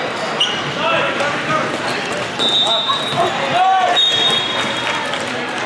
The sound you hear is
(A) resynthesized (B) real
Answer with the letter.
B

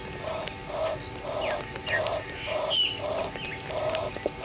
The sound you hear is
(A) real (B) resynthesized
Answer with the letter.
A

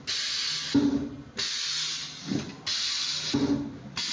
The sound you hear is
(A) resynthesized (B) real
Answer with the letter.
B